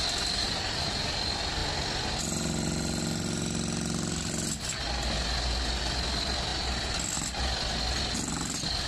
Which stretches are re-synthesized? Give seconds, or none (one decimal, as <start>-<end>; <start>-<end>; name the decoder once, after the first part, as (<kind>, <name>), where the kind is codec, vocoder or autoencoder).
none